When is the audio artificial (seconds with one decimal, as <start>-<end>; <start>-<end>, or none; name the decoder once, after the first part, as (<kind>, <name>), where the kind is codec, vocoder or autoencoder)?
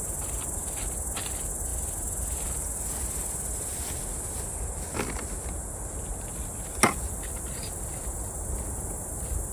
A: 1.7-4.0 (vocoder, BigVGAN v2); 6.3-8.1